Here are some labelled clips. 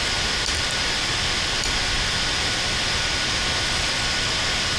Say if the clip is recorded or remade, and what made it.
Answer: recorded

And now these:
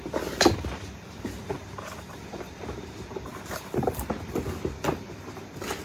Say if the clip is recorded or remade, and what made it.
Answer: recorded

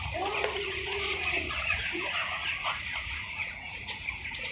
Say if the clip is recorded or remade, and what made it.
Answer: remade, vocoder, Vocos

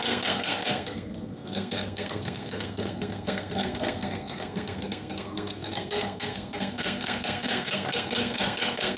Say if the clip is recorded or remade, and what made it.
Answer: remade, codec, SNAC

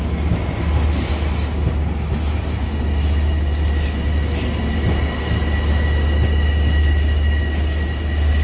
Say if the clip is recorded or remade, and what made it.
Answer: recorded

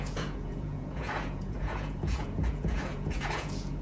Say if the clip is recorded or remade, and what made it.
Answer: remade, vocoder, Vocos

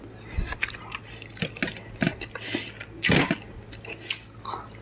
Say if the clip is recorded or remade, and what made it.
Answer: recorded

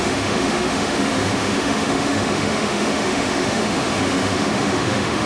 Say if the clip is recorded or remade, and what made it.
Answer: remade, autoencoder, DAC-VAE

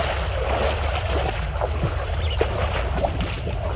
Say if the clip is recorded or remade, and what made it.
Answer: recorded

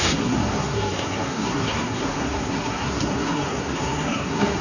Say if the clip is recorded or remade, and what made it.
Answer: remade, codec, SNAC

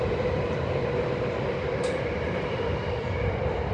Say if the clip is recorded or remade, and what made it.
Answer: remade, vocoder, BigVGAN v2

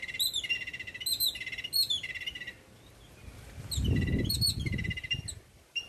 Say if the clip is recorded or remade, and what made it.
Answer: recorded